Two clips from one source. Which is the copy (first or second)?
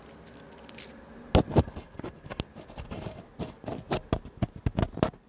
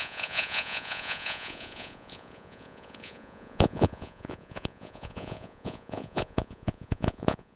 second